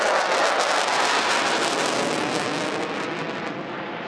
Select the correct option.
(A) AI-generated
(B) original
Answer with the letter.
B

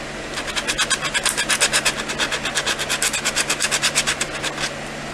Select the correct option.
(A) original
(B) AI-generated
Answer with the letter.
A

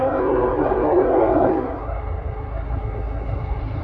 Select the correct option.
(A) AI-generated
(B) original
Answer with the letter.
A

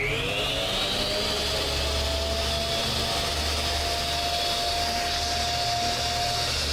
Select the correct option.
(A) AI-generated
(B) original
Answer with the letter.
B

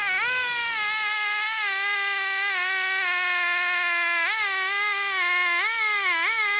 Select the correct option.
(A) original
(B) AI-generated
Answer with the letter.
A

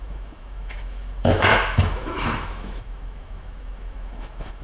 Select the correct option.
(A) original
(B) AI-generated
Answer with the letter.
B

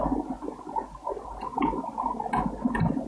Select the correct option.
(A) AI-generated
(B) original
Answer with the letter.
B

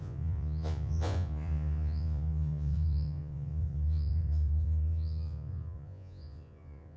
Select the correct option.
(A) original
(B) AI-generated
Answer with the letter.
B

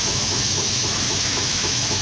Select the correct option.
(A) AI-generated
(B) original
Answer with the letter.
A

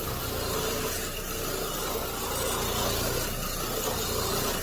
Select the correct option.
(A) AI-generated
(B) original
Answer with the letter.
B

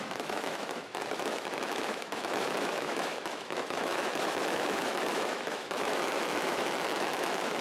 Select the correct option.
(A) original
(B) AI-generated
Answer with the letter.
B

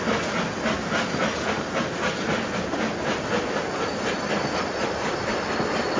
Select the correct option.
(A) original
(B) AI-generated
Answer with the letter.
A